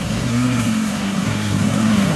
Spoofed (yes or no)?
yes